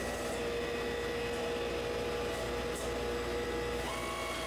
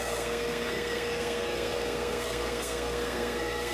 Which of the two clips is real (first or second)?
first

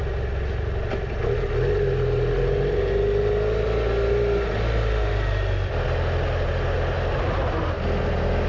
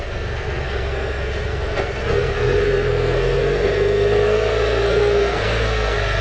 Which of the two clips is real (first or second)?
first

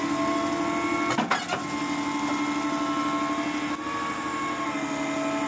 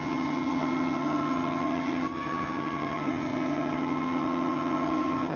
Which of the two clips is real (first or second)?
first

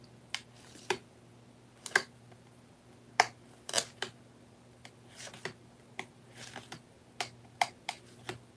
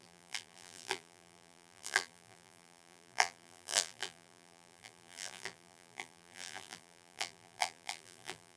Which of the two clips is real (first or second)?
first